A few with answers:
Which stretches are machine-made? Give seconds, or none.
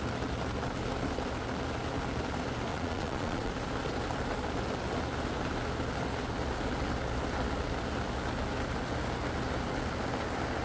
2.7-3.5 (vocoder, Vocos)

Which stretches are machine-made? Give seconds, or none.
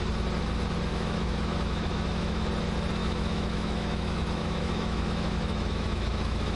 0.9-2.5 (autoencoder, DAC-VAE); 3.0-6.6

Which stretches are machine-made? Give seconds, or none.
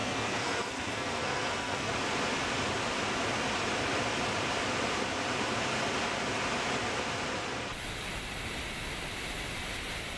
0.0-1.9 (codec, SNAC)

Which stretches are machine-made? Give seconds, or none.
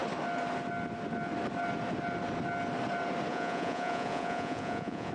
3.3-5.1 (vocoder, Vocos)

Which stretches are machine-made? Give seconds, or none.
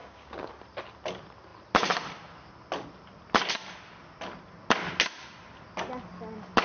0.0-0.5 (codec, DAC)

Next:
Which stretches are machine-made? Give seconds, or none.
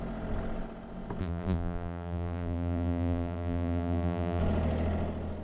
1.2-4.4 (vocoder, BigVGAN v2)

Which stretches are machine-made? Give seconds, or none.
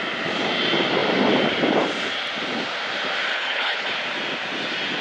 3.3-3.9 (codec, HILCodec)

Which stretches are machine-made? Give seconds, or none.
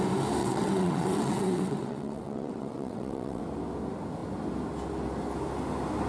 0.4-3.4 (vocoder, WaveNeXt)